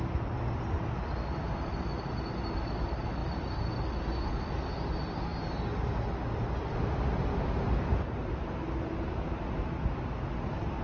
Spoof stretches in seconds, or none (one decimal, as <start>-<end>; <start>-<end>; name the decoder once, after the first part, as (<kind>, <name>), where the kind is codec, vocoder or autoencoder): none